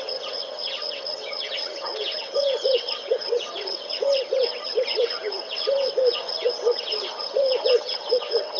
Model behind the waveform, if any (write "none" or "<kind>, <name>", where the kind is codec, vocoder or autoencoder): vocoder, WaveNeXt